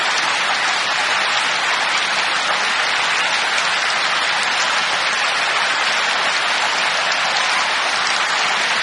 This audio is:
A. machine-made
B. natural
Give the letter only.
B